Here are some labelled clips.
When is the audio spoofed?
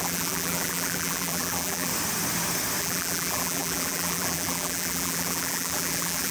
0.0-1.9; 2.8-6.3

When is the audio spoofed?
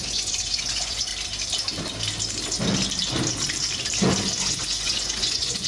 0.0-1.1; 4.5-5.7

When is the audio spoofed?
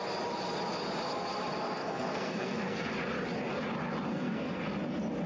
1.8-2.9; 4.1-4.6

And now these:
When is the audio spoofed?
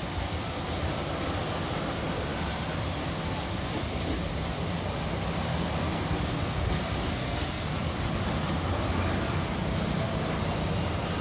5.5-7.7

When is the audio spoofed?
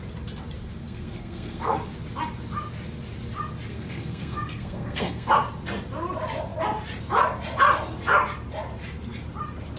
0.6-1.9; 3.7-5.3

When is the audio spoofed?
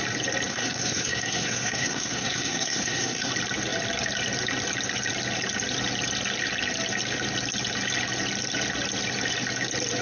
0.5-3.3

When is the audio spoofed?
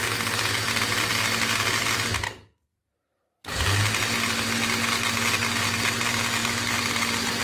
2.7-3.6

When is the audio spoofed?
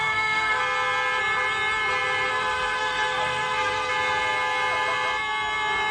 0.0-0.6; 2.3-3.9